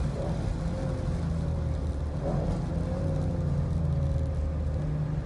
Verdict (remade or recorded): recorded